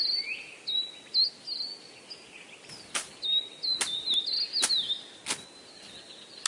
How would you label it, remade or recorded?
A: recorded